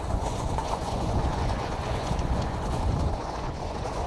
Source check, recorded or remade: remade